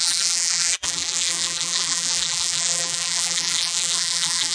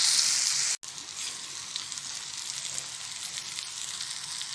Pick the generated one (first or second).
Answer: first